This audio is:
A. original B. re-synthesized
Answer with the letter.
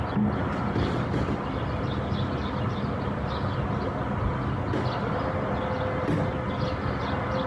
A